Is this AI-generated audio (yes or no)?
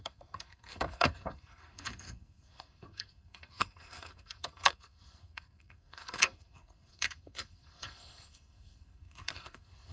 yes